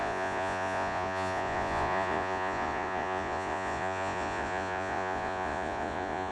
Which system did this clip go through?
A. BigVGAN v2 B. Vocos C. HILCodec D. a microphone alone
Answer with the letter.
B